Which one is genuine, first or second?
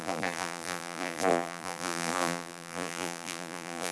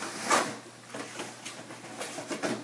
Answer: second